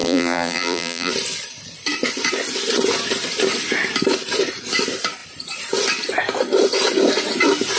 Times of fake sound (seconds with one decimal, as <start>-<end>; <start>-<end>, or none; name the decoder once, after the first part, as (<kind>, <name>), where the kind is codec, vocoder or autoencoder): 0.0-1.1 (vocoder, BigVGAN v2)